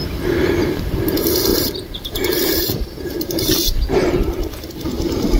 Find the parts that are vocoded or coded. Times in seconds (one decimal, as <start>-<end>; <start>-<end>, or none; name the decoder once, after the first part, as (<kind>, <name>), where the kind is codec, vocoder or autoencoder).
1.5-4.7 (vocoder, BigVGAN v2)